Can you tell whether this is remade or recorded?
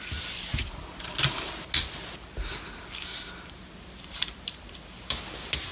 recorded